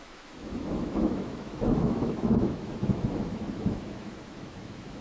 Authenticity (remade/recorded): remade